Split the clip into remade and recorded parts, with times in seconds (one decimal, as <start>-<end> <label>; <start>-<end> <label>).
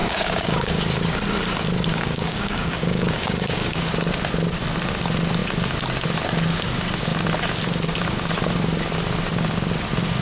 0.0-0.8 remade; 0.8-1.9 recorded; 1.9-3.8 remade; 3.8-10.2 recorded